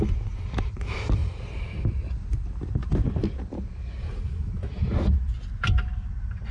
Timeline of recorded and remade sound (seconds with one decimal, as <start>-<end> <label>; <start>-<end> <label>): 0.0-1.2 recorded; 1.2-1.8 remade; 1.8-6.5 recorded